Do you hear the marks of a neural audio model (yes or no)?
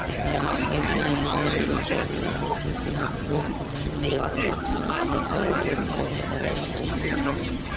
yes